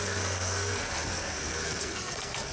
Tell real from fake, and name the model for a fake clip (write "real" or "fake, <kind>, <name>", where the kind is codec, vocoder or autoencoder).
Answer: fake, codec, SNAC